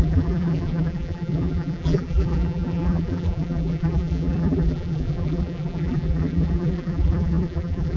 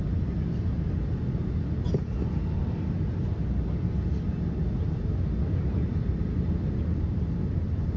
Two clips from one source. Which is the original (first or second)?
second